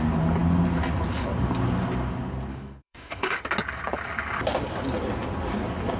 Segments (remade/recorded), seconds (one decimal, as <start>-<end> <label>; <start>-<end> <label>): 0.0-2.5 recorded; 2.5-3.4 remade; 3.4-6.0 recorded